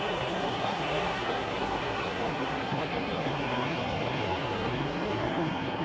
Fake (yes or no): yes